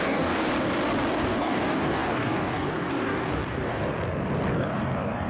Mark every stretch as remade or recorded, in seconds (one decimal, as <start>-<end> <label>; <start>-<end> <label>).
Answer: 0.0-0.5 remade; 0.5-1.1 recorded; 1.1-3.8 remade; 3.8-4.5 recorded; 4.5-5.3 remade